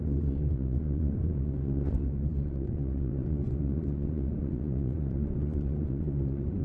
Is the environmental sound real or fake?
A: fake